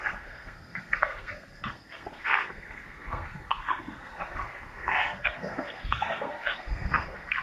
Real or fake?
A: fake